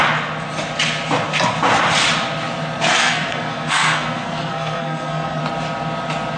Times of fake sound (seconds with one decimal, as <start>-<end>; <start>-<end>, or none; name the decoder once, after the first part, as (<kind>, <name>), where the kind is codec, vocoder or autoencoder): 3.0-5.4 (codec, SNAC)